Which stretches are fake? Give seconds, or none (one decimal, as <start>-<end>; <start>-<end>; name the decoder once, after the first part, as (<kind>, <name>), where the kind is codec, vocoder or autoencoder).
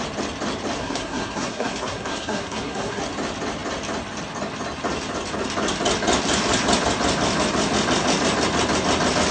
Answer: 0.8-3.0 (codec, SNAC)